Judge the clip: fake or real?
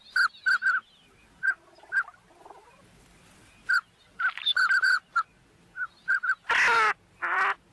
real